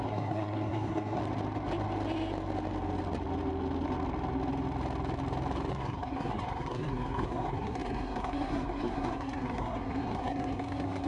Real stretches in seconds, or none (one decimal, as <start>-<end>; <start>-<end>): 1.2-5.7